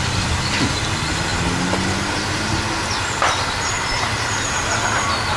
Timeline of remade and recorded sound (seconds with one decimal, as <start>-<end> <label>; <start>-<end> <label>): 0.0-5.4 recorded